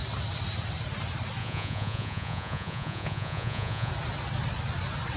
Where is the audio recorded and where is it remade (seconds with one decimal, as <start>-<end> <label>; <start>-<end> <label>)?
0.0-1.4 recorded; 1.4-3.9 remade; 3.9-5.2 recorded